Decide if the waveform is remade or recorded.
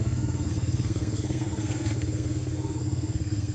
remade